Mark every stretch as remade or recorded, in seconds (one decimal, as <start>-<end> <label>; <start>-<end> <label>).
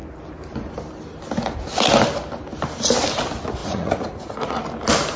0.0-3.6 recorded; 3.6-4.6 remade; 4.6-5.2 recorded